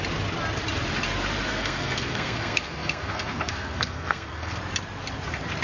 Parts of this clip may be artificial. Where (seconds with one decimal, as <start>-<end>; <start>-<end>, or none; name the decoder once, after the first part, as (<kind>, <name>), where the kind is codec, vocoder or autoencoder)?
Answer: 1.5-4.6 (codec, SNAC)